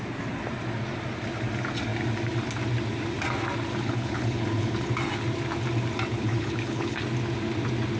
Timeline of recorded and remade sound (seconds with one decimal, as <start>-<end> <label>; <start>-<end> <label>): 0.0-3.7 recorded; 3.7-4.9 remade; 4.9-6.1 recorded; 6.1-7.0 remade; 7.0-8.0 recorded